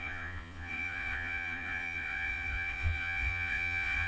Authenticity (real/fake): fake